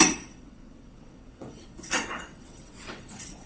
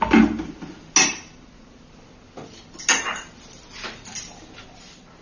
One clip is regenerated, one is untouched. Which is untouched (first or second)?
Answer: second